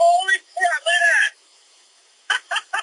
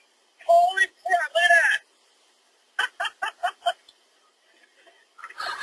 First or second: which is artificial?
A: first